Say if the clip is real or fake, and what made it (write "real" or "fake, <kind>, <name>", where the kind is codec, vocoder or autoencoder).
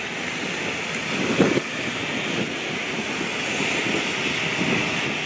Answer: real